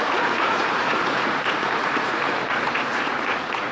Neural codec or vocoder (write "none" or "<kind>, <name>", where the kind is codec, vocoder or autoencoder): vocoder, Vocos